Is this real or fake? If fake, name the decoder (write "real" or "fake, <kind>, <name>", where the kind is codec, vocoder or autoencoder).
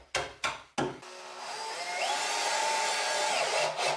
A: real